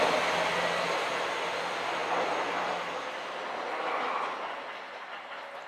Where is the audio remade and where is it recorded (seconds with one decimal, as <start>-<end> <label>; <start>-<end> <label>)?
0.0-5.7 recorded